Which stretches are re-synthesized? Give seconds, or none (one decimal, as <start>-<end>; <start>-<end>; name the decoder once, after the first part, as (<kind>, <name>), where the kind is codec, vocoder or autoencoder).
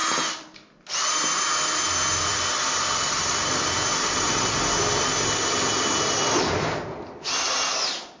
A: none